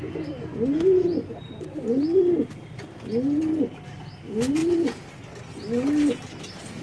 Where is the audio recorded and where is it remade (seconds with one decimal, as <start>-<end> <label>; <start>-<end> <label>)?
0.0-6.8 recorded